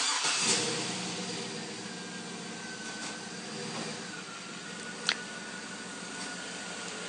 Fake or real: real